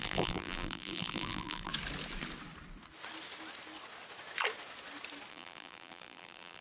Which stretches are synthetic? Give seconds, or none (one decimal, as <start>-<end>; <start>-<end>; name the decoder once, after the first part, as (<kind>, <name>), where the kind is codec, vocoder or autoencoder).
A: 0.0-1.7 (vocoder, BigVGAN v2); 5.3-6.6